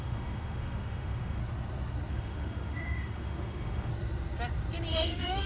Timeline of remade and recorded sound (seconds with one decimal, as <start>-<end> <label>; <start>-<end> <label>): 0.0-1.4 remade; 1.4-2.1 recorded; 2.1-3.9 remade; 3.9-4.9 recorded; 4.9-5.5 remade